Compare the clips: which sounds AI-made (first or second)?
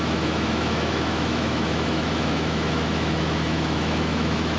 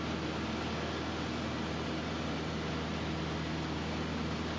first